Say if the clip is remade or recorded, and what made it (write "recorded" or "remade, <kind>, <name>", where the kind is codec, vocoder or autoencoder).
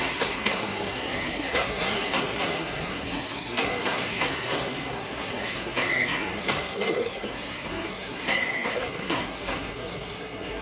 remade, codec, SNAC